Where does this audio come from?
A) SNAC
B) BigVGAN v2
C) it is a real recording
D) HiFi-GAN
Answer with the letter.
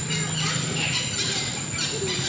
C